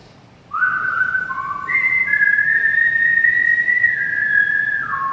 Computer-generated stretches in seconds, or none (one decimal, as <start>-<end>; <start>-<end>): 0.0-3.1